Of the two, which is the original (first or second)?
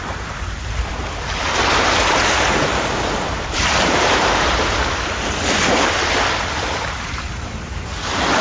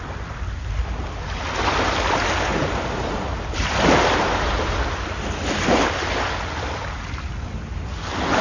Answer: second